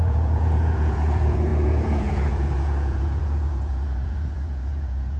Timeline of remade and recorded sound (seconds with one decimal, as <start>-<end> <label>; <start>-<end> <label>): 0.0-5.2 remade

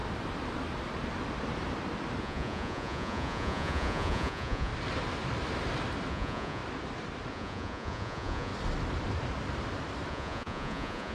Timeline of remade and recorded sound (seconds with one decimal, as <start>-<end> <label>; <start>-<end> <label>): 0.0-2.2 recorded; 2.2-4.7 remade; 4.7-6.1 recorded; 6.1-6.6 remade; 6.6-7.3 recorded; 7.3-8.5 remade; 8.5-10.1 recorded; 10.1-11.1 remade

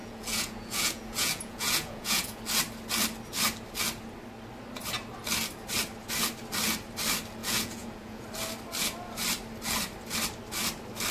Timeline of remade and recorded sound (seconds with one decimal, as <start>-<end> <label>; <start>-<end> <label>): 0.0-2.4 remade; 2.4-7.4 recorded; 7.4-8.2 remade; 8.2-11.1 recorded

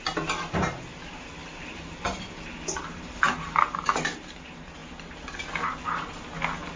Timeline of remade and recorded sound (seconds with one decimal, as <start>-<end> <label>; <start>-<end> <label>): 0.0-6.8 recorded

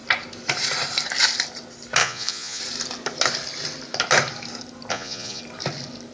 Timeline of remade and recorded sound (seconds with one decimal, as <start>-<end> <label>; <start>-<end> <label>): 0.0-2.0 recorded; 2.0-2.6 remade; 2.6-4.9 recorded; 4.9-5.4 remade; 5.4-6.1 recorded

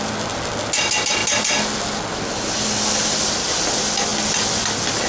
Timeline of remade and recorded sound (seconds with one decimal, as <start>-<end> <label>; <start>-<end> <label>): 0.0-5.1 recorded

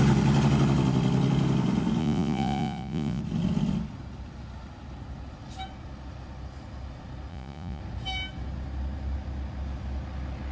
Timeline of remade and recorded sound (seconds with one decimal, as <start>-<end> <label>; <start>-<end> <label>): 0.0-2.0 recorded; 2.0-3.2 remade; 3.2-7.3 recorded; 7.3-7.8 remade; 7.8-10.5 recorded